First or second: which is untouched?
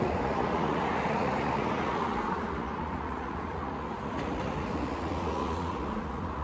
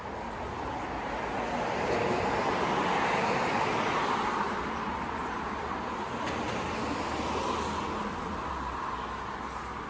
second